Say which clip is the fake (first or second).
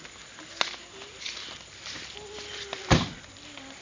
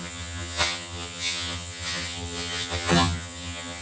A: second